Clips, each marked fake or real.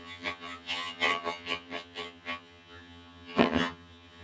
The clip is fake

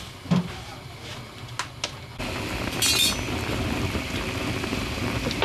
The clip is real